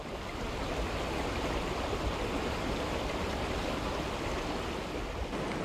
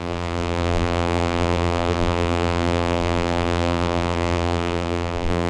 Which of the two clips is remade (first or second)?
second